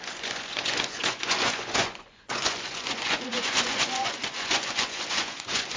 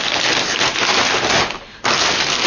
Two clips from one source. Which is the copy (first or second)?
first